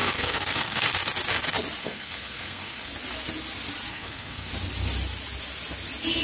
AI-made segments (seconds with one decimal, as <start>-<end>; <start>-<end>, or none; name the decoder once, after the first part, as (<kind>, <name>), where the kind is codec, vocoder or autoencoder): 0.0-0.8 (codec, SNAC); 1.8-2.9; 3.9-4.5